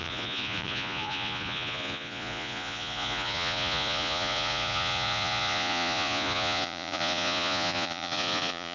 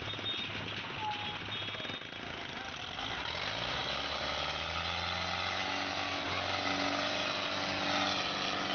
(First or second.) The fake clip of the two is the first